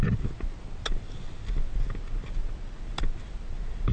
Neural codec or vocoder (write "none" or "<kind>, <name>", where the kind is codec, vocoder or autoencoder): none